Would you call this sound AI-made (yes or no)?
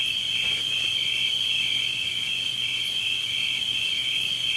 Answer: yes